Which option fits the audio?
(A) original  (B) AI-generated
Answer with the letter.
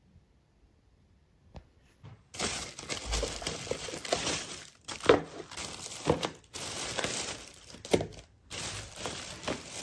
B